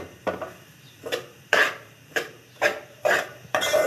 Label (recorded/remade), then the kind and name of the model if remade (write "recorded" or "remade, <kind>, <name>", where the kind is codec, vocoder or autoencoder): remade, vocoder, BigVGAN v2